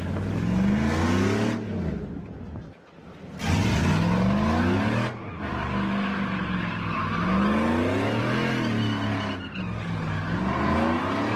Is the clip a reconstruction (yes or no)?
no